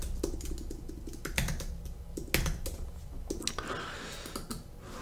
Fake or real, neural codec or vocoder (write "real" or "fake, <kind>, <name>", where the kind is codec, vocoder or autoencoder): real